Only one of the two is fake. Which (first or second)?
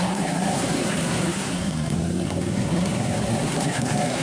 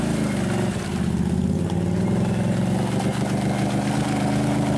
first